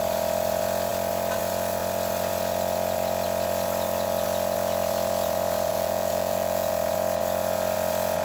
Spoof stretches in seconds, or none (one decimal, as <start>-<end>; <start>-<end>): 5.7-6.7